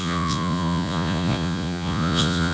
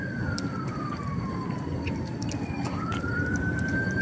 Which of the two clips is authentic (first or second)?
second